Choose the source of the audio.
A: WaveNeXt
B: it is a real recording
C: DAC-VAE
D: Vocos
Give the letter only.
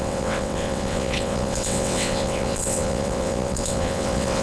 A